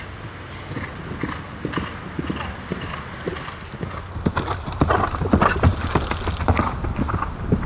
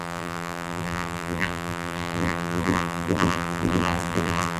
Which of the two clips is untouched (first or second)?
first